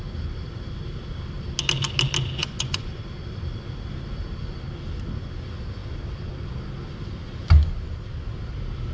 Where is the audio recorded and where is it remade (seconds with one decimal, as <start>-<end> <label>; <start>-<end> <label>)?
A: 0.0-2.4 recorded; 2.4-3.0 remade; 3.0-8.9 recorded